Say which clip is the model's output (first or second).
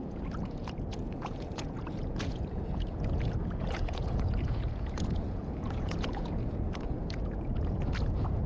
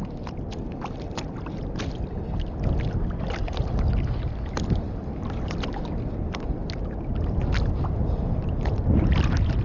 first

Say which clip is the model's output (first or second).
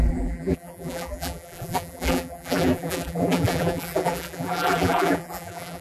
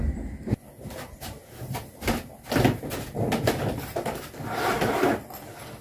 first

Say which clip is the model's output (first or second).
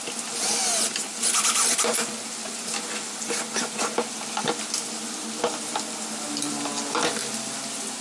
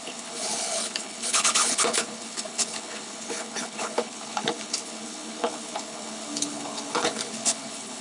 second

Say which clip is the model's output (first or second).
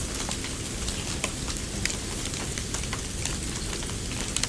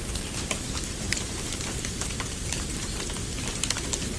second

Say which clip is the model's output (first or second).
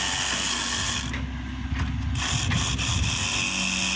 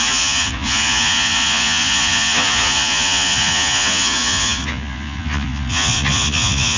second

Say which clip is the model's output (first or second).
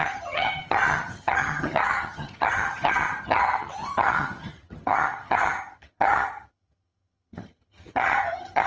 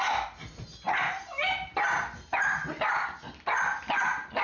first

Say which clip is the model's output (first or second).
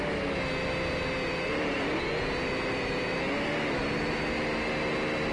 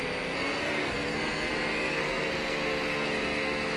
second